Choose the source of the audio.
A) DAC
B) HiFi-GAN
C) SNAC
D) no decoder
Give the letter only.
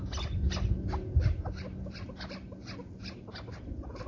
D